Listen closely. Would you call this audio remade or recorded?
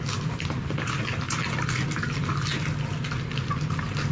recorded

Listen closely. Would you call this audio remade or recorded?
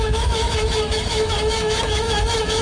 remade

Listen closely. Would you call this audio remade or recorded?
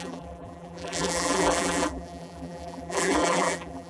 remade